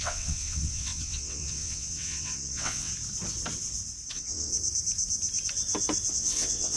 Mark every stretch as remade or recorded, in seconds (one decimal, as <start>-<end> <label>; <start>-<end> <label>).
0.0-2.9 remade; 2.9-4.1 recorded; 4.1-4.5 remade; 4.5-6.1 recorded; 6.1-6.8 remade